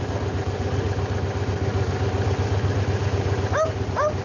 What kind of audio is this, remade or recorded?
recorded